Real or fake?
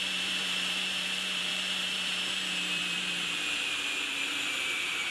fake